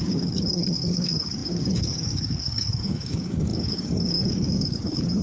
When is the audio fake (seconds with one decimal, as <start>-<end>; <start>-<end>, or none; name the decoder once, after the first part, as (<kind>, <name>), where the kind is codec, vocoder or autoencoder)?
0.0-5.2 (codec, DAC)